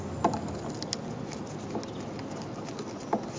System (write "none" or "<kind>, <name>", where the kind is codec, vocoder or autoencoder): none